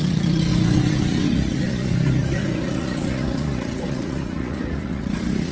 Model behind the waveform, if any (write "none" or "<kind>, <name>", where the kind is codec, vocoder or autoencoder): vocoder, Vocos